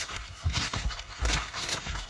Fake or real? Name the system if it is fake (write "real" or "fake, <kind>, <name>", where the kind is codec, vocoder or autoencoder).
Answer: fake, codec, SNAC